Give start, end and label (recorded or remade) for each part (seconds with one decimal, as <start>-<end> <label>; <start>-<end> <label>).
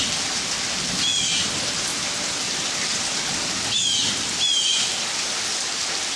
0.0-6.2 recorded